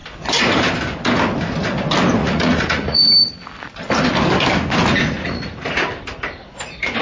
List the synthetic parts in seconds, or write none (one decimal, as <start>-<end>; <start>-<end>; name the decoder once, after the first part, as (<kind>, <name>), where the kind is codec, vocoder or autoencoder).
2.2-3.0 (vocoder, Vocos); 5.2-5.8